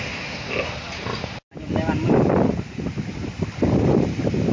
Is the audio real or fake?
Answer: real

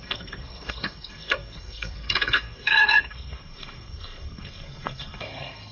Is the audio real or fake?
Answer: fake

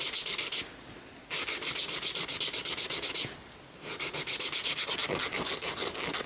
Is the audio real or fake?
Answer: real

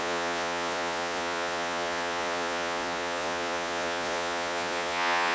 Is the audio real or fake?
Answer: fake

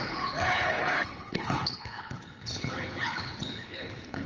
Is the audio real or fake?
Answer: fake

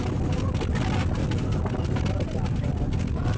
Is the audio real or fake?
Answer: real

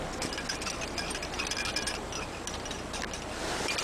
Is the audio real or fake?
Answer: real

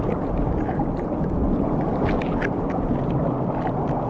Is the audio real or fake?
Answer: real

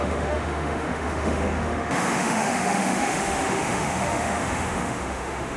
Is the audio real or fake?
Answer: fake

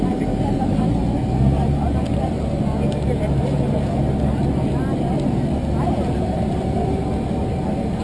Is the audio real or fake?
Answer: real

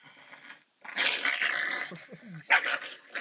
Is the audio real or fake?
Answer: real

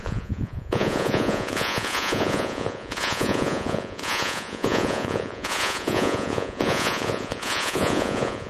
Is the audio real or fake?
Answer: fake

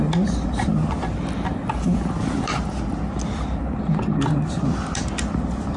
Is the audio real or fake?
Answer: real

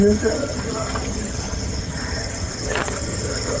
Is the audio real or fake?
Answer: fake